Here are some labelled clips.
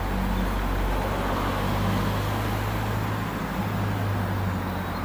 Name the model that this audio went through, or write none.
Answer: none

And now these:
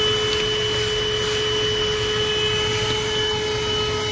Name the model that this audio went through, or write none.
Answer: none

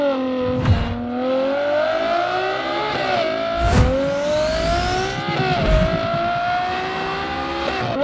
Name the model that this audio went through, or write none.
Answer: none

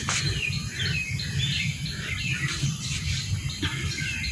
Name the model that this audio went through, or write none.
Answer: none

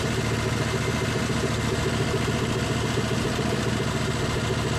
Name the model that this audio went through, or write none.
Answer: none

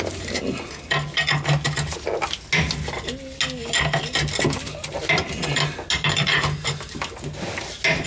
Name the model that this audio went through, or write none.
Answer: none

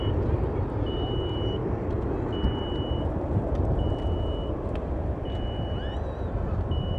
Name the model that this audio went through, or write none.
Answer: none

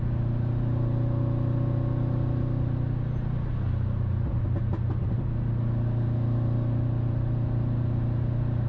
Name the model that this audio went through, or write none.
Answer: none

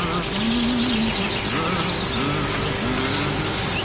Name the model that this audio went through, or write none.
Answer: none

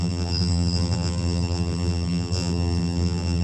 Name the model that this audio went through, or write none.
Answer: vocoder, BigVGAN v2